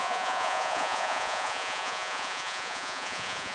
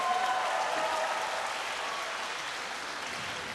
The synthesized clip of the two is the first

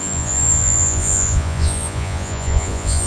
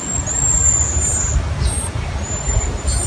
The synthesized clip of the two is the first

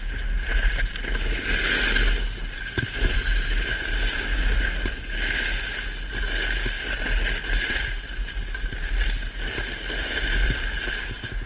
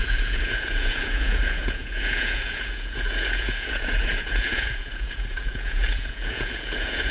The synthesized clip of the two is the second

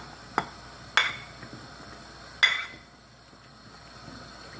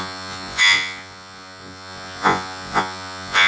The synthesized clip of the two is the second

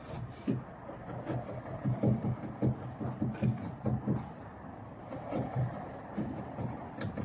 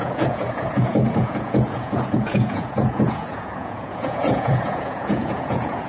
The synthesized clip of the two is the second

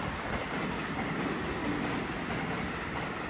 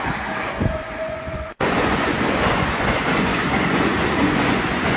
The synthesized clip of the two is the second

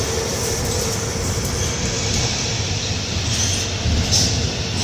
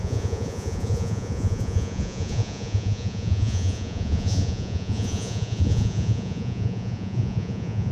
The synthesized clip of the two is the second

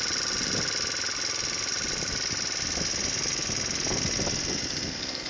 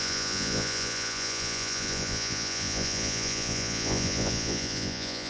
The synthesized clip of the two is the second